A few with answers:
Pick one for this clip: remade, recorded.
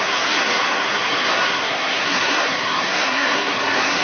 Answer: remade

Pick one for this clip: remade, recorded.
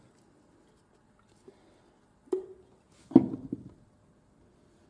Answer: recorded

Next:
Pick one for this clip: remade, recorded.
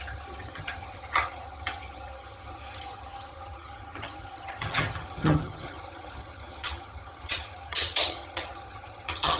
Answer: remade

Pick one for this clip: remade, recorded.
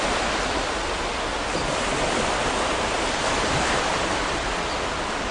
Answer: remade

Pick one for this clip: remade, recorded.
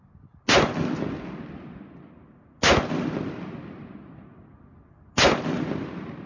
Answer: recorded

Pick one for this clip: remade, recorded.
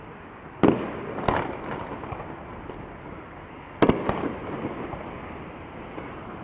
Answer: recorded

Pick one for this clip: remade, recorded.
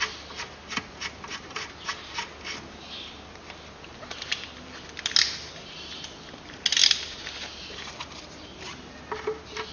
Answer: recorded